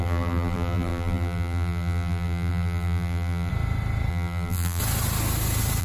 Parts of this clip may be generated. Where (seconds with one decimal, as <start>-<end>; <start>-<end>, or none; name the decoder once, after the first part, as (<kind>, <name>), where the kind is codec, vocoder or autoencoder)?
0.0-3.5 (vocoder, BigVGAN v2); 4.1-4.8